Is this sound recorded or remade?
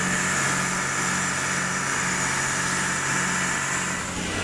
recorded